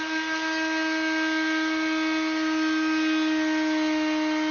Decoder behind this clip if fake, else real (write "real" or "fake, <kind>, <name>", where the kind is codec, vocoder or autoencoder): real